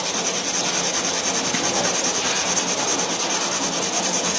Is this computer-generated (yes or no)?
no